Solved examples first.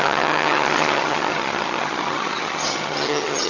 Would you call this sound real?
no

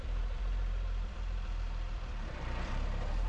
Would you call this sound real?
no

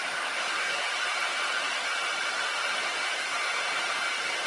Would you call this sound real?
no